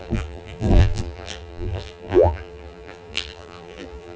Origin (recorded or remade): remade